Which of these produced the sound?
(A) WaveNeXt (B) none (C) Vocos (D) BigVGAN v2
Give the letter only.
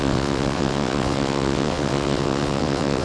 A